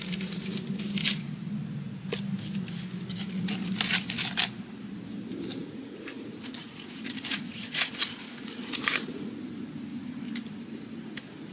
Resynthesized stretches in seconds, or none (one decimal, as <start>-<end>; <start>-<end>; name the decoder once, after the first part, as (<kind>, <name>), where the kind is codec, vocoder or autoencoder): 5.6-9.3 (vocoder, Vocos)